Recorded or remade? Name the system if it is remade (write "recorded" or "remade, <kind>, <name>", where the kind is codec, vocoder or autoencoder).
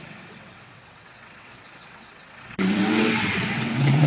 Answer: remade, vocoder, WaveNeXt